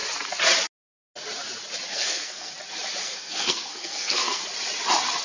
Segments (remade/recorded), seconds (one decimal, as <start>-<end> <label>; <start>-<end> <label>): 0.0-1.9 recorded; 1.9-2.5 remade; 2.5-3.0 recorded; 3.0-4.4 remade; 4.4-5.2 recorded